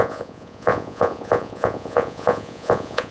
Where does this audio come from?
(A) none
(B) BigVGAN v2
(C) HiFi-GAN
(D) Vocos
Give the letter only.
D